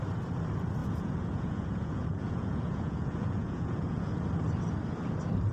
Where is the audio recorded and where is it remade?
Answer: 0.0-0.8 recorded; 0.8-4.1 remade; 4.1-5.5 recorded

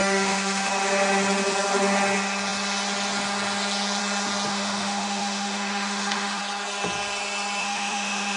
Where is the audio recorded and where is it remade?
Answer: 0.0-0.7 remade; 0.7-4.5 recorded; 4.5-6.4 remade; 6.4-7.6 recorded; 7.6-8.4 remade